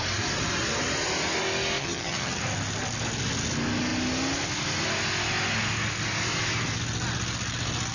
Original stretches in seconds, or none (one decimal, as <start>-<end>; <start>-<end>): 0.0-1.8; 2.4-7.9